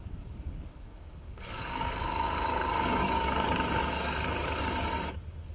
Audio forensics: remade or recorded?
remade